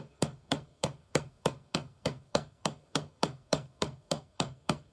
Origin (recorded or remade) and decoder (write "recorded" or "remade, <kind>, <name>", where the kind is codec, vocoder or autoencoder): remade, codec, SNAC